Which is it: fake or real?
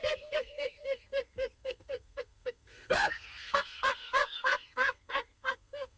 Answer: fake